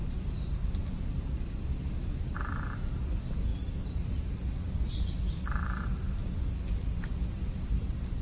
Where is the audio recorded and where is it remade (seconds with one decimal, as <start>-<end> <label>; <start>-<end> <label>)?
0.0-0.9 recorded; 0.9-8.2 remade